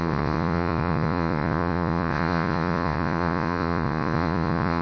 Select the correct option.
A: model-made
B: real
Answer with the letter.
A